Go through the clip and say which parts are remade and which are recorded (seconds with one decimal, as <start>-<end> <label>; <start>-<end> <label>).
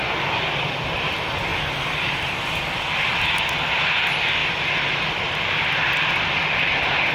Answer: 0.0-0.5 recorded; 0.5-1.5 remade; 1.5-3.7 recorded; 3.7-4.4 remade; 4.4-5.2 recorded; 5.2-7.1 remade